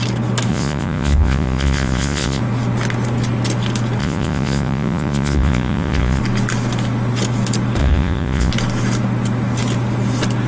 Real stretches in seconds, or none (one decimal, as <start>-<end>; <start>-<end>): 0.0-0.5; 2.4-4.0; 6.2-7.8; 8.5-10.5